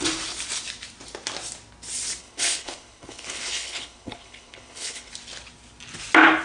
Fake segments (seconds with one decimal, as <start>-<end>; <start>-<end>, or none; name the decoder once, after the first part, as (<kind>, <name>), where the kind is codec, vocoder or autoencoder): 2.2-5.1 (codec, HILCodec)